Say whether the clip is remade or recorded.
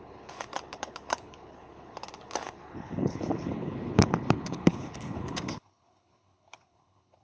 remade